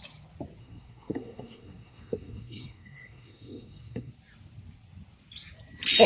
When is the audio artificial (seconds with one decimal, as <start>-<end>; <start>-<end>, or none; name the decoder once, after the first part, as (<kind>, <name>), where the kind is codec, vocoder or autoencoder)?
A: 0.6-4.1 (codec, SNAC)